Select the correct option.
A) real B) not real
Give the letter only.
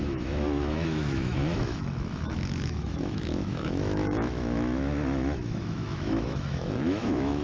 B